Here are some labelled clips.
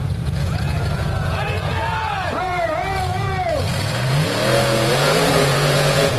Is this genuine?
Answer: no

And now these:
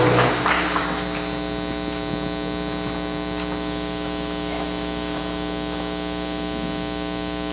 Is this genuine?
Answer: yes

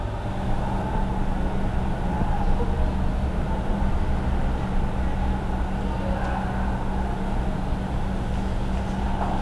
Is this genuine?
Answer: yes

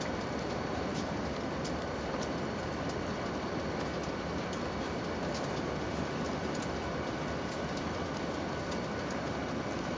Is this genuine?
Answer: yes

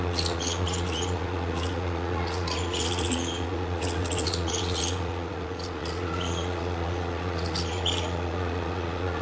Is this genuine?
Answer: no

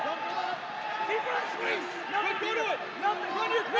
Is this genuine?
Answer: yes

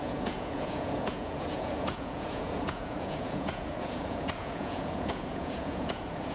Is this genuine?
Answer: no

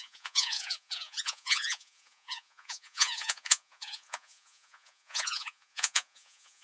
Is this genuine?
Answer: no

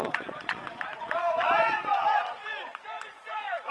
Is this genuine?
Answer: no